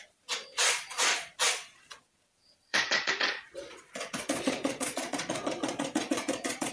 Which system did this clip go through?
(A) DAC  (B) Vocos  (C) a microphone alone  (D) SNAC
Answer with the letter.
B